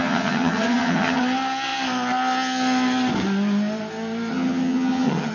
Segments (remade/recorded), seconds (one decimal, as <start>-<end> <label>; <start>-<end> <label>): 0.0-1.2 remade; 1.2-4.3 recorded; 4.3-5.3 remade